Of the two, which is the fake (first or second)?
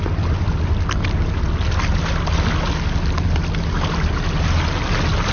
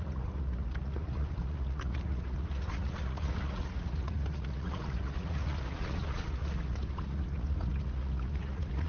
second